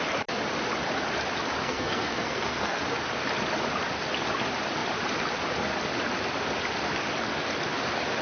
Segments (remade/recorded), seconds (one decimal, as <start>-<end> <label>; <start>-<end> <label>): 0.0-1.6 recorded; 1.6-2.8 remade; 2.8-8.2 recorded

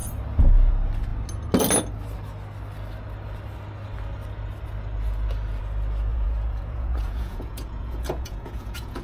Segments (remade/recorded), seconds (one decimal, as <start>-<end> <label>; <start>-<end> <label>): 0.0-6.1 recorded; 6.1-9.0 remade